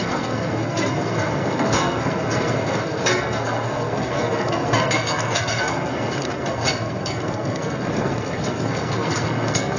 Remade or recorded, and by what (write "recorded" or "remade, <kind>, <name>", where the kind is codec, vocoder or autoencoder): remade, codec, SNAC